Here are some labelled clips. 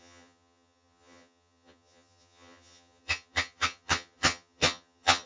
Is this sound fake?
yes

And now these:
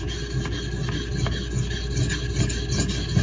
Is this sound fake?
no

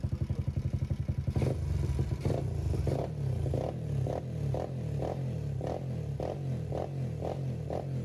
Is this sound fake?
no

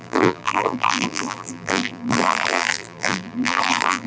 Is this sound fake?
yes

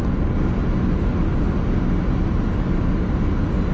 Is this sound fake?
no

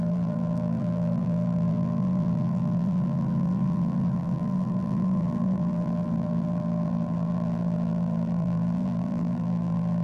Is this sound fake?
yes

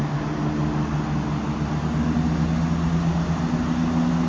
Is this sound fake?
no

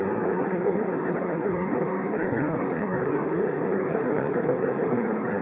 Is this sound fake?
yes